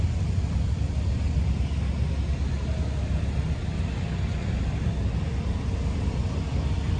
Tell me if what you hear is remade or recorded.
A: recorded